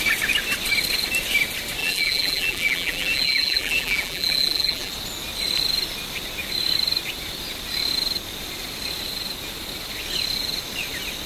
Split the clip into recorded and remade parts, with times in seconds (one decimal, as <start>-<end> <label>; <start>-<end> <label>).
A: 0.0-1.8 recorded; 1.8-4.9 remade; 4.9-11.3 recorded